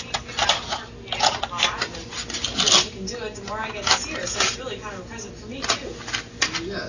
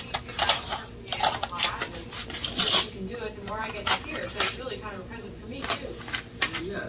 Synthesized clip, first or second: second